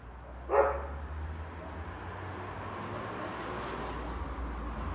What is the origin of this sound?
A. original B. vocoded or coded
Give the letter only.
A